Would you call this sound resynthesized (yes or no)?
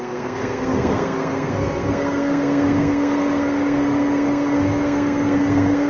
yes